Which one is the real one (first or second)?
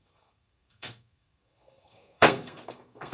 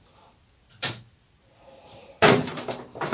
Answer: second